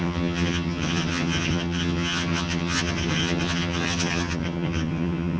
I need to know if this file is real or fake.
fake